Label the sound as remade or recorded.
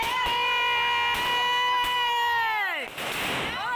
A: recorded